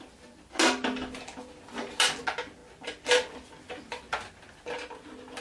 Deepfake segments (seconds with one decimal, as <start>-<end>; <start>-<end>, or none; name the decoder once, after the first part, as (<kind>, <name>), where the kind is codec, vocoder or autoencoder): none